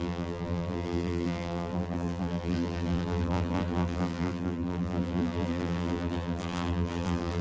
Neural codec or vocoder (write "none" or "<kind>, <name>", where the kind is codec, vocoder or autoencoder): vocoder, BigVGAN v2